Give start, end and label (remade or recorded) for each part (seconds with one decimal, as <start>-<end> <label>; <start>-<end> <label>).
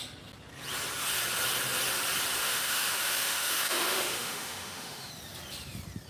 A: 0.0-2.4 recorded; 2.4-5.1 remade; 5.1-6.1 recorded